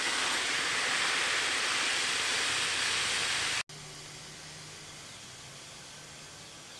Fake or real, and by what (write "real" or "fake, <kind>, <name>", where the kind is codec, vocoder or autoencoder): real